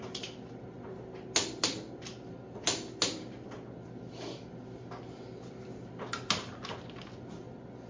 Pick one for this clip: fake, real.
real